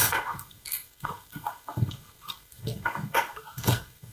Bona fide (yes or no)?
no